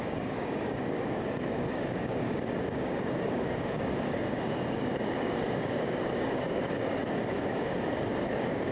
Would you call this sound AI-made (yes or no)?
yes